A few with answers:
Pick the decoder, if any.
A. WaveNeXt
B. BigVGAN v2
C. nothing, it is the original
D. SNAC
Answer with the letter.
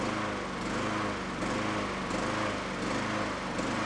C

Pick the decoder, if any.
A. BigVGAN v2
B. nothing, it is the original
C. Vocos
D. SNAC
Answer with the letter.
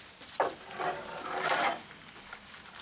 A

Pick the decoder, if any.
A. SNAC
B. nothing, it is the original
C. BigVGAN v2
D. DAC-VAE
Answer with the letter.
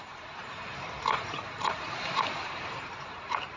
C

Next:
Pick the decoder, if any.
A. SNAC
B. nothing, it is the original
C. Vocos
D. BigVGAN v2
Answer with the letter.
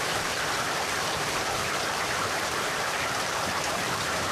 D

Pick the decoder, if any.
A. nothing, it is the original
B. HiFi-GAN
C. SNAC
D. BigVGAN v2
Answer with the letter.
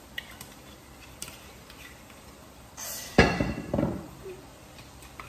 D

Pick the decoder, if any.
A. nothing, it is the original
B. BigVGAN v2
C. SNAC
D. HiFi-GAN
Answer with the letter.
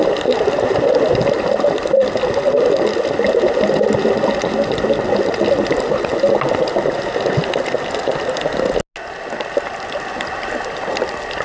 A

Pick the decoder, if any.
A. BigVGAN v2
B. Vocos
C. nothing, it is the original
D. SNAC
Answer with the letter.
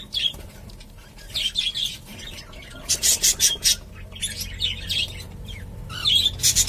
C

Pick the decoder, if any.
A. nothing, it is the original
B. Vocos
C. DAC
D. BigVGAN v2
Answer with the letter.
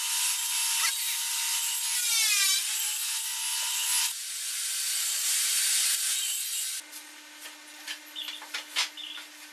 A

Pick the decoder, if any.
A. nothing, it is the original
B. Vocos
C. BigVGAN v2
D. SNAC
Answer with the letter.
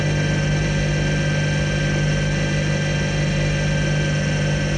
A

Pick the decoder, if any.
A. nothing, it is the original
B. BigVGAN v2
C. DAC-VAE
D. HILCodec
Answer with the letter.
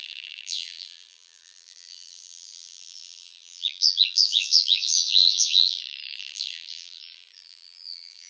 B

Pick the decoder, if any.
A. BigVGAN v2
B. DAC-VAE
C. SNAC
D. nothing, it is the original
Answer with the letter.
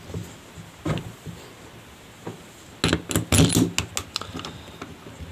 D